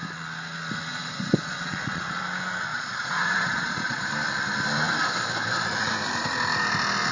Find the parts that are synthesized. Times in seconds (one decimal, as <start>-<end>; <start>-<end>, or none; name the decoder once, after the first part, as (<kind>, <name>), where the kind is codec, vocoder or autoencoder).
0.9-2.2 (vocoder, Vocos); 2.7-4.1